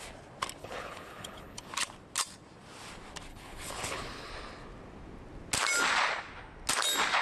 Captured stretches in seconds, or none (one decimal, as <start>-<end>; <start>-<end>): 0.0-0.6; 1.7-3.3; 4.3-7.2